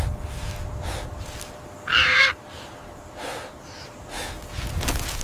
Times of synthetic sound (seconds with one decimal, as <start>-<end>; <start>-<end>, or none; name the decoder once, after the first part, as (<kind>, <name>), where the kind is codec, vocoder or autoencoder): 1.9-4.2 (vocoder, BigVGAN v2)